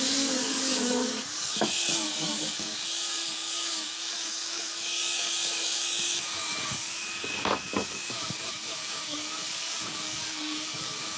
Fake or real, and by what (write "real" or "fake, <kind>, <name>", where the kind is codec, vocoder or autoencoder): fake, codec, DAC